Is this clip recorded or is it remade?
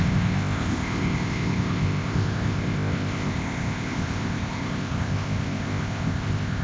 remade